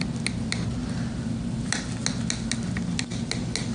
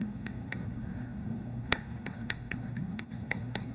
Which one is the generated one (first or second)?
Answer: second